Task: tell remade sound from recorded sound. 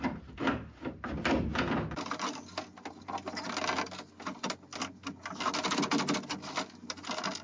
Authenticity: recorded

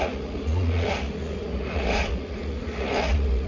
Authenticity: remade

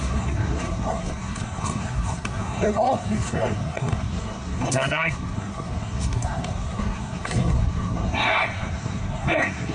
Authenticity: remade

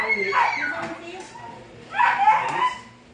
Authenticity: recorded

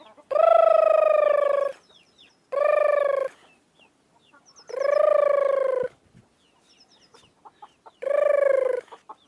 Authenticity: recorded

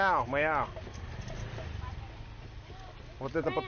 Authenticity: recorded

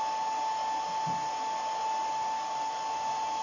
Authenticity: recorded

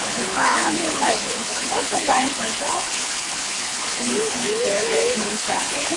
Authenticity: remade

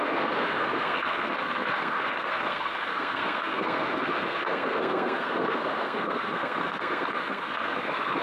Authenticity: remade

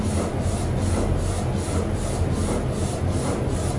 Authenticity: recorded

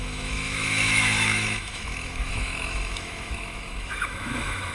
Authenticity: remade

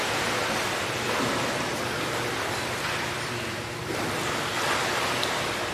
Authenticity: recorded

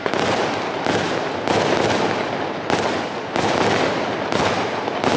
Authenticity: recorded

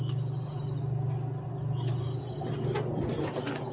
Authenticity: recorded